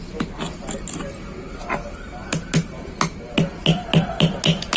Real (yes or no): yes